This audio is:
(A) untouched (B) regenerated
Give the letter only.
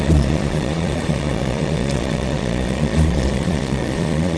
B